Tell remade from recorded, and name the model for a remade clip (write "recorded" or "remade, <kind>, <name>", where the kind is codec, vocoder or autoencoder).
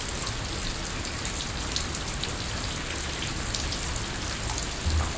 recorded